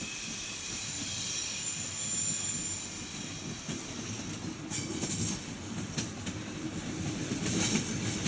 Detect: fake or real real